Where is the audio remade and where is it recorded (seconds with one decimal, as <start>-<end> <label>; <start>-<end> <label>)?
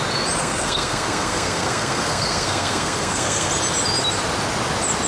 0.0-0.4 recorded; 0.4-3.5 remade; 3.5-5.1 recorded